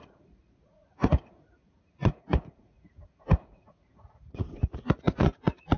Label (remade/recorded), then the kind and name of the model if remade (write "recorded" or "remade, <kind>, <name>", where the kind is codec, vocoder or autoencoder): remade, vocoder, Vocos